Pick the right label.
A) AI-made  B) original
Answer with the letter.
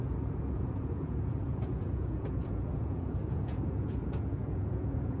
A